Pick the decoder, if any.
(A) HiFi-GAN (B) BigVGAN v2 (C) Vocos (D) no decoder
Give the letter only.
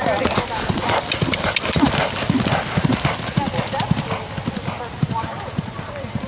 D